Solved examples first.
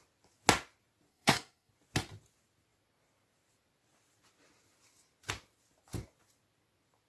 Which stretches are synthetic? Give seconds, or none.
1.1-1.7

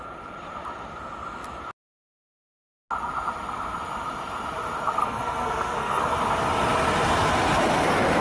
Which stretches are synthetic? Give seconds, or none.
5.0-6.0